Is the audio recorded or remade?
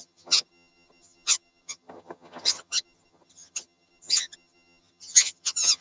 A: remade